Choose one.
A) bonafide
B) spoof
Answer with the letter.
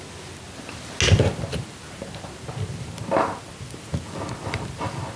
A